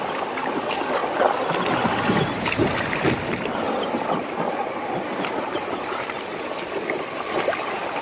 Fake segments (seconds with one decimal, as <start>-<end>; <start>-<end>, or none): none